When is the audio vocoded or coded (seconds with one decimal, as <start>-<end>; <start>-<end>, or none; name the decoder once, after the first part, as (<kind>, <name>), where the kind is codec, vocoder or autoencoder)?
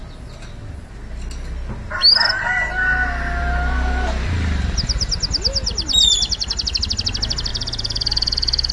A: 7.5-8.7 (vocoder, Vocos)